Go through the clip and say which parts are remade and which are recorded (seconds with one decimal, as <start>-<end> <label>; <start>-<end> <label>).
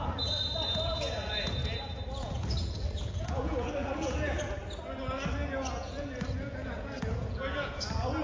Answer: 0.0-1.6 remade; 1.6-2.2 recorded; 2.2-4.6 remade; 4.6-5.8 recorded; 5.8-8.2 remade